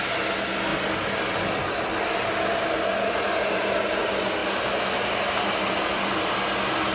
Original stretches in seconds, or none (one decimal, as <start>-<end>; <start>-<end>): 0.0-6.9